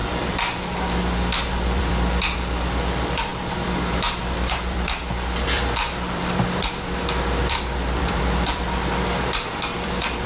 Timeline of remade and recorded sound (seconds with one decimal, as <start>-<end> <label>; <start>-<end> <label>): 0.0-1.5 recorded; 1.5-3.3 remade; 3.3-4.2 recorded; 4.2-10.3 remade